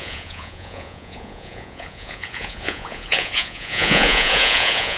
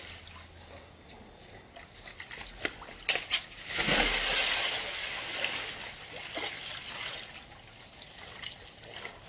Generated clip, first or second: first